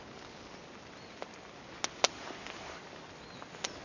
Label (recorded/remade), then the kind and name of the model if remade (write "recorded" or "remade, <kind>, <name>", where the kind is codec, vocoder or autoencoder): recorded